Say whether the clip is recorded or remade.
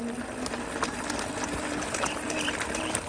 recorded